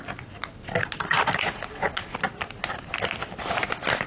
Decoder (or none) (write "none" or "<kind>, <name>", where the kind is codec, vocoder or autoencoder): none